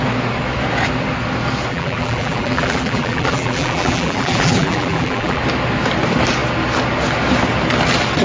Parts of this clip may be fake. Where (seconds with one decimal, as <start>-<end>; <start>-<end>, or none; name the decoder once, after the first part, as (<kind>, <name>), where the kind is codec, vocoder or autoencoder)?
1.7-5.4 (vocoder, BigVGAN v2)